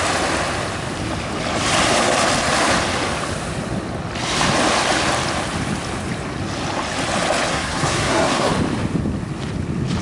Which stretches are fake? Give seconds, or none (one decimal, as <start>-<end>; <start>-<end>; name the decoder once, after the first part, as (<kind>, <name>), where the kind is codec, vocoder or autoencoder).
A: 7.5-8.5 (codec, SNAC)